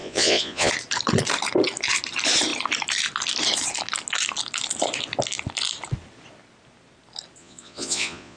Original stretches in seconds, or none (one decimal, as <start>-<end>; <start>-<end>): 0.7-7.4